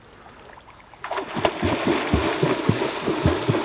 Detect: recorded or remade recorded